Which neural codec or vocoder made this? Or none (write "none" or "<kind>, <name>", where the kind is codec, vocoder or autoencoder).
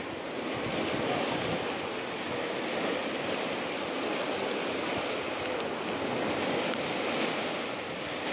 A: none